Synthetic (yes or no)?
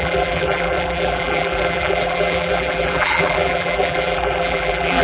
yes